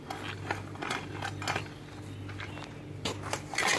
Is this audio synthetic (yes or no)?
no